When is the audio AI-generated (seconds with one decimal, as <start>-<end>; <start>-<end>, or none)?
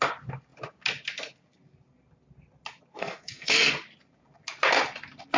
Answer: 3.0-3.7